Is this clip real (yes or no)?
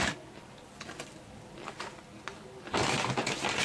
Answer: yes